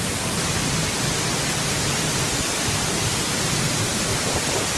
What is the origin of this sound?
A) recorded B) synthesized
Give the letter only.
A